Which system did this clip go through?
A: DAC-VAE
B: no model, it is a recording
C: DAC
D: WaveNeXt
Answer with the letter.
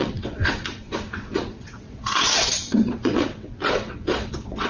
D